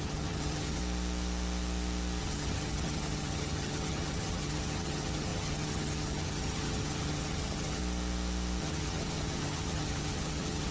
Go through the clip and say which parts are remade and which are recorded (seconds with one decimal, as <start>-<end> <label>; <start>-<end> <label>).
0.0-0.8 remade; 0.8-2.2 recorded; 2.2-7.8 remade; 7.8-8.6 recorded; 8.6-10.7 remade